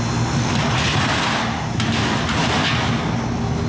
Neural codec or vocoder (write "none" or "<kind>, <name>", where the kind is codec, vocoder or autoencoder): none